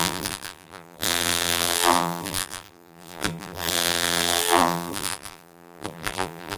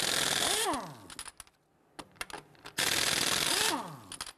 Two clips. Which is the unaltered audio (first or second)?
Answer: second